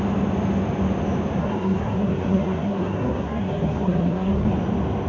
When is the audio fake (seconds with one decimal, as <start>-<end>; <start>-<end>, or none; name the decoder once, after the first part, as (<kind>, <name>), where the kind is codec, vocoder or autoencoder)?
1.4-4.5 (codec, SNAC)